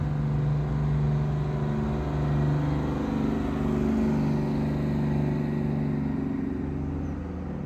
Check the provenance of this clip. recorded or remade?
recorded